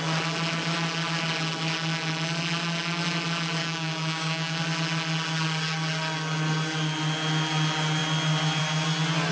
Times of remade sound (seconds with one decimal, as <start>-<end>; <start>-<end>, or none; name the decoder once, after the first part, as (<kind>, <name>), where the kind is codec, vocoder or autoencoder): 3.6-4.6 (codec, DAC)